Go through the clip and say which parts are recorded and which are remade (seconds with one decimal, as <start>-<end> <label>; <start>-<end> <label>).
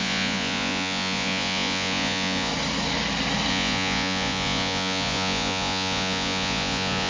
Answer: 0.0-2.5 remade; 2.5-3.5 recorded; 3.5-7.1 remade